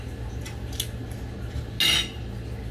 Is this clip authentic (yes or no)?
yes